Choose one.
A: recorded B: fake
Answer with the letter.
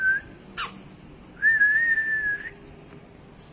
A